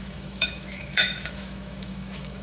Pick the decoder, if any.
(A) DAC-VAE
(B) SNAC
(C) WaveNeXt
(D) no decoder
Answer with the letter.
A